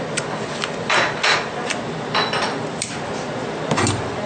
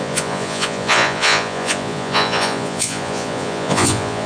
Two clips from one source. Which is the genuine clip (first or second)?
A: first